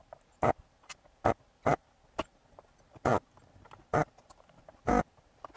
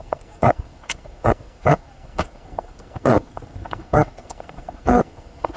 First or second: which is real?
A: first